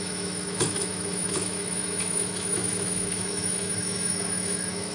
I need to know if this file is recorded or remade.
remade